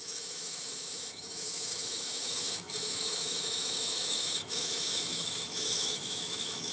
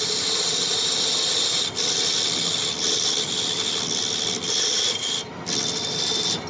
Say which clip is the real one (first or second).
second